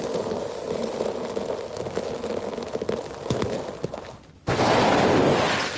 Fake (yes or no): no